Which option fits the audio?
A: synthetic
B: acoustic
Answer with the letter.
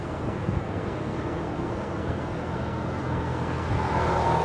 A